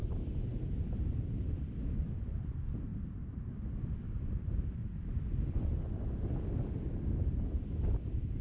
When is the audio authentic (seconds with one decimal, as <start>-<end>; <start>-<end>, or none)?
0.0-2.9; 3.5-4.8; 5.5-8.4